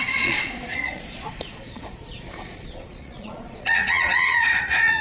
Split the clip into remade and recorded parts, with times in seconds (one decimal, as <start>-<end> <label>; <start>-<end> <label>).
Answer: 0.0-5.0 remade